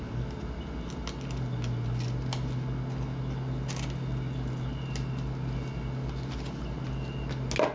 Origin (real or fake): real